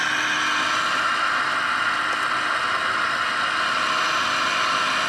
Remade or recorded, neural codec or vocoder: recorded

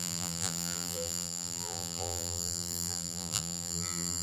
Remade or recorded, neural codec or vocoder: remade, vocoder, BigVGAN v2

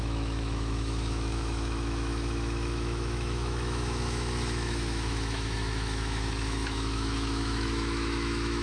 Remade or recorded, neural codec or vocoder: remade, autoencoder, DAC-VAE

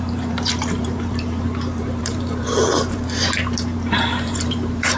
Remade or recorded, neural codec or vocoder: remade, vocoder, BigVGAN v2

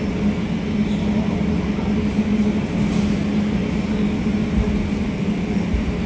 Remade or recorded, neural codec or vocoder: recorded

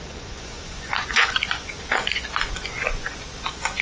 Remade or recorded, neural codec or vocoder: remade, vocoder, Vocos